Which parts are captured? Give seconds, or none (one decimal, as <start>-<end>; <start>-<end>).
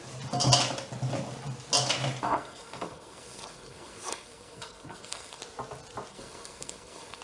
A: 0.0-2.2; 5.4-6.1